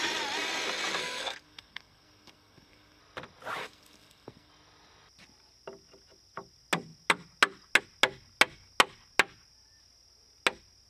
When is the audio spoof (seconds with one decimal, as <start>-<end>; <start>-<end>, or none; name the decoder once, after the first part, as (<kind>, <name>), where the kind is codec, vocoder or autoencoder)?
1.0-3.0 (codec, SNAC); 3.6-4.5